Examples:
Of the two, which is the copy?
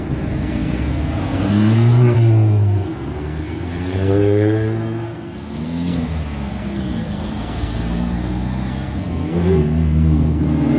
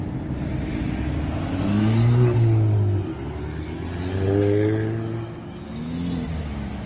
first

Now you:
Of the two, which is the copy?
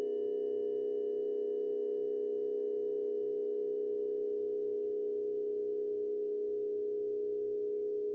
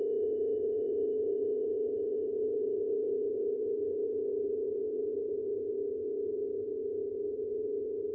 second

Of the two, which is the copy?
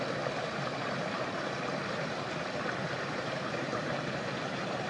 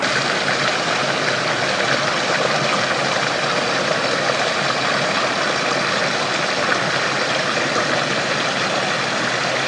first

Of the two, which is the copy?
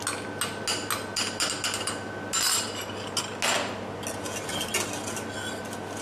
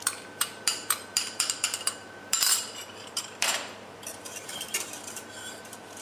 second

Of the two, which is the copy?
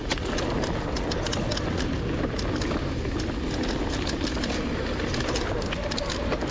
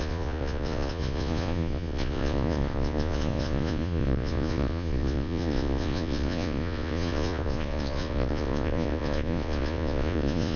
second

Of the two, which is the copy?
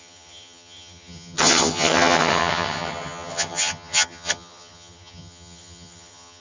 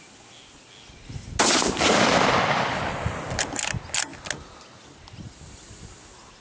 first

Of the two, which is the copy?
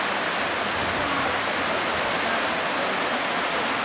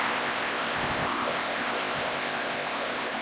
second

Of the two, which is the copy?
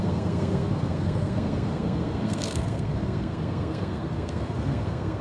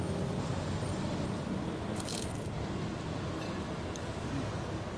first